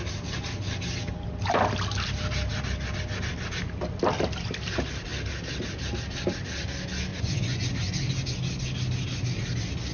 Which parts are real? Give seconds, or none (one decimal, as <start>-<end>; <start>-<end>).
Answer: 0.0-7.1; 7.7-9.9